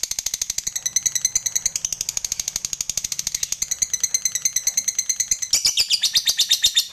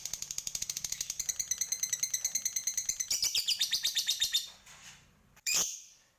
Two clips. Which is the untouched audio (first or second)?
first